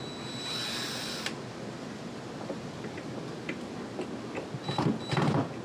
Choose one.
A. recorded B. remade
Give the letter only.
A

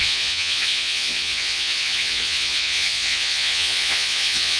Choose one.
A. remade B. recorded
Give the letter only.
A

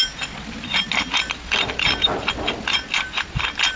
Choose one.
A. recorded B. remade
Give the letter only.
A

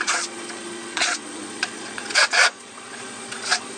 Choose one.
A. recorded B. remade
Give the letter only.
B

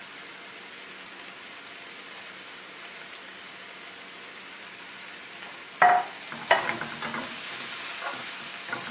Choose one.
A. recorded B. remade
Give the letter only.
A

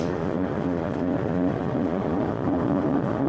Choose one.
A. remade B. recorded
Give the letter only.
A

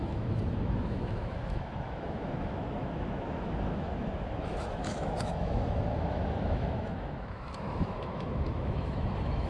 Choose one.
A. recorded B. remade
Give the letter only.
B